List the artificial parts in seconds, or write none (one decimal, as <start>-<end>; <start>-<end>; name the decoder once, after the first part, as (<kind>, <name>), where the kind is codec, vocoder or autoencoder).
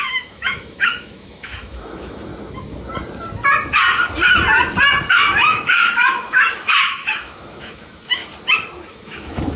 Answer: 0.0-2.3 (autoencoder, DAC-VAE); 5.1-8.2; 8.9-9.6